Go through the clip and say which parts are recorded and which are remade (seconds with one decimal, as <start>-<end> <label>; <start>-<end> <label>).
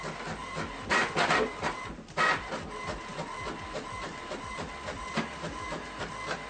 0.0-0.4 recorded; 0.4-1.0 remade; 1.0-6.5 recorded